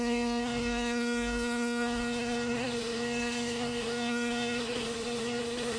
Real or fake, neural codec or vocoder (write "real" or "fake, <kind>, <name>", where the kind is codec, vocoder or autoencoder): fake, codec, SNAC